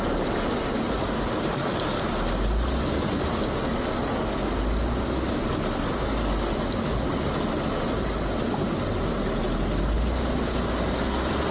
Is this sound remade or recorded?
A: recorded